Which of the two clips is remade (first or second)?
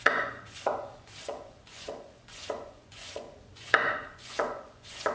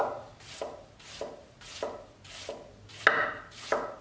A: first